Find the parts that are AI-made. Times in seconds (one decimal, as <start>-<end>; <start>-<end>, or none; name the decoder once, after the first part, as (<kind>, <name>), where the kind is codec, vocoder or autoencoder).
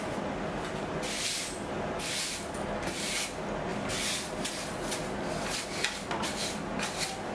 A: none